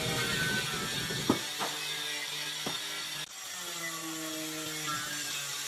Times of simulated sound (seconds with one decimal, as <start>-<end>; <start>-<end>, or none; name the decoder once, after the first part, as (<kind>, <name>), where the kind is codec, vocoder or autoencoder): none